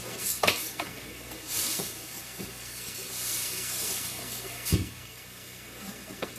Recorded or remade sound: remade